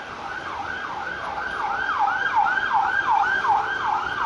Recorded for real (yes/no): yes